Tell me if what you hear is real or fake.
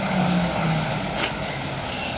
fake